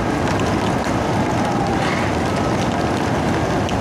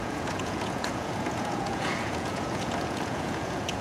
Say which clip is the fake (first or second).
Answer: second